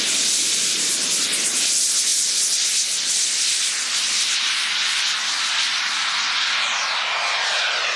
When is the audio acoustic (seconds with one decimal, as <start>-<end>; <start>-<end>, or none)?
0.0-8.0